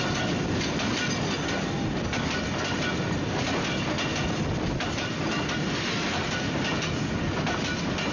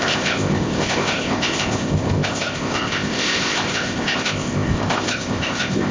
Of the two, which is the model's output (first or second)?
second